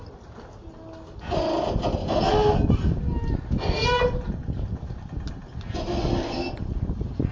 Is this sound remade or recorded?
recorded